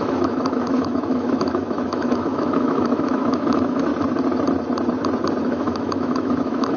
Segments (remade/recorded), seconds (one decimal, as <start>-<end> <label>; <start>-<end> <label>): 0.0-3.9 remade; 3.9-5.4 recorded; 5.4-6.8 remade